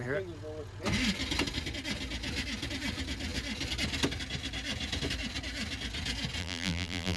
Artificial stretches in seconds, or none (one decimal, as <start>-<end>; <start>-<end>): 6.4-7.2